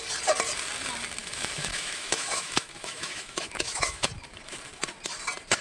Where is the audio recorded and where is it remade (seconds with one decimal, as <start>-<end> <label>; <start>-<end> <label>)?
0.0-1.2 recorded; 1.2-4.1 remade; 4.1-5.6 recorded